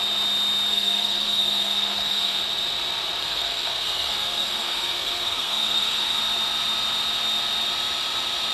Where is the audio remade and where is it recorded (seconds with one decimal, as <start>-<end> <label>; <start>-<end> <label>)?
0.0-0.7 recorded; 0.7-2.4 remade; 2.4-3.2 recorded; 3.2-6.2 remade; 6.2-8.5 recorded